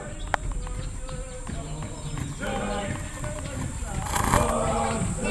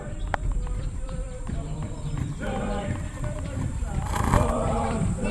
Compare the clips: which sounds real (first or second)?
first